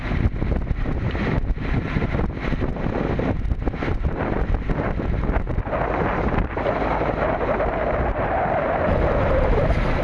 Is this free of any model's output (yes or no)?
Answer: yes